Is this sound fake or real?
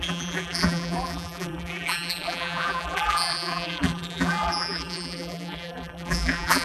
fake